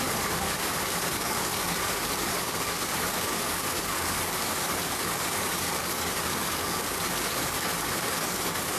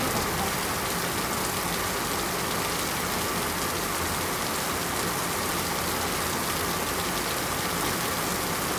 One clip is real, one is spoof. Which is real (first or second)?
second